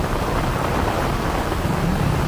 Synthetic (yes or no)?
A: yes